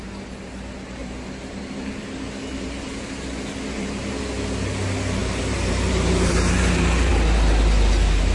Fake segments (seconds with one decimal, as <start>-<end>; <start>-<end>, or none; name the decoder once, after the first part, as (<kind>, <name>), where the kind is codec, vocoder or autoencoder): 1.0-4.2 (vocoder, BigVGAN v2); 5.2-7.1